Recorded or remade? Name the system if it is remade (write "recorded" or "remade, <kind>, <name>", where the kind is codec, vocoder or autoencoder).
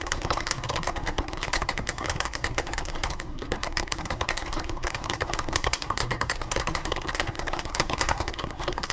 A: remade, codec, SNAC